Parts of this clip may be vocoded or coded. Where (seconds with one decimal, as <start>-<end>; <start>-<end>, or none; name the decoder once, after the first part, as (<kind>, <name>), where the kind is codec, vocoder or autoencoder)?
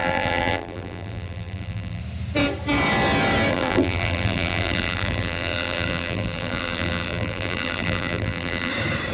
0.0-2.0 (vocoder, BigVGAN v2); 3.5-8.7